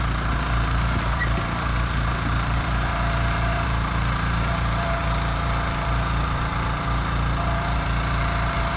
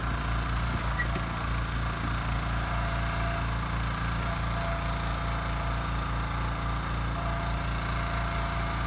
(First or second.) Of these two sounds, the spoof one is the first